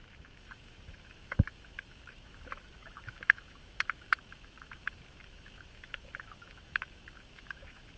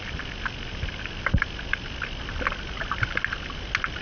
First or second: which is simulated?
first